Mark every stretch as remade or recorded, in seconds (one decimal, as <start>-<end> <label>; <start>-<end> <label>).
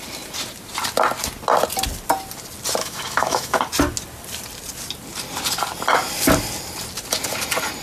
0.0-2.8 recorded; 2.8-3.6 remade; 3.6-7.8 recorded